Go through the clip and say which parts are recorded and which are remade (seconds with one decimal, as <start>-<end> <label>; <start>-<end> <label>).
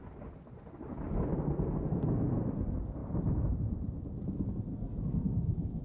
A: 0.0-4.7 recorded; 4.7-5.8 remade